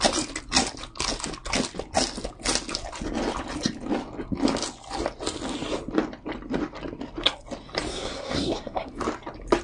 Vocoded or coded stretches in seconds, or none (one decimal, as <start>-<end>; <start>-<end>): 7.9-8.9